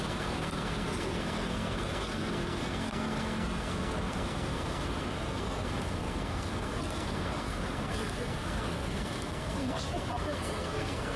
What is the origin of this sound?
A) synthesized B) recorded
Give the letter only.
A